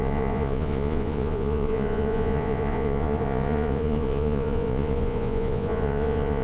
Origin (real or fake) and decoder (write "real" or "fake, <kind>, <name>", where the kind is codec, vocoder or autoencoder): fake, vocoder, Vocos